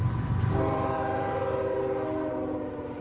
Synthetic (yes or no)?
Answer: yes